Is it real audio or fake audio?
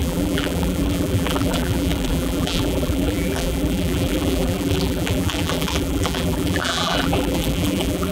fake